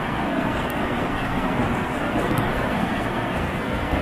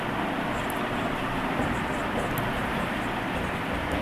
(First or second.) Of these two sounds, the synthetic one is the first